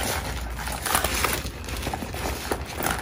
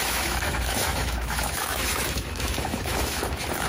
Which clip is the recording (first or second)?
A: first